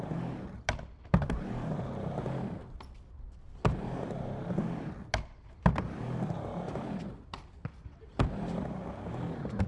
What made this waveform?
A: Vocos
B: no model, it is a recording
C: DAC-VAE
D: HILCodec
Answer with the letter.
B